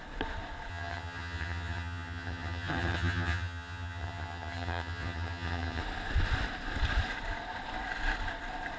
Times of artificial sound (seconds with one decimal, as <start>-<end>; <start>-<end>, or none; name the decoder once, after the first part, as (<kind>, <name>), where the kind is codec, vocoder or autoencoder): 0.7-5.8 (vocoder, HiFi-GAN)

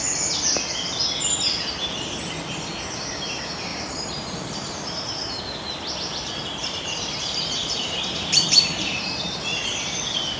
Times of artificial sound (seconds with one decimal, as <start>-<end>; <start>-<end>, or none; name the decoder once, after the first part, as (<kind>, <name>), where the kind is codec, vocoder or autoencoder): 3.7-5.4 (vocoder, BigVGAN v2); 6.6-10.0